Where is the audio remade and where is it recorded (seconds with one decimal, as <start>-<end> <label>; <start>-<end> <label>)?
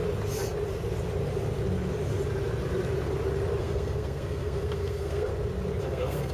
0.0-3.6 recorded; 3.6-5.3 remade; 5.3-5.8 recorded; 5.8-6.3 remade